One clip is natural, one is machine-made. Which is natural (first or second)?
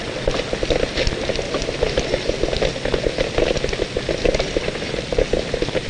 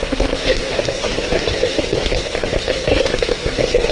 first